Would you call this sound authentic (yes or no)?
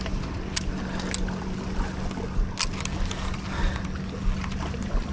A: yes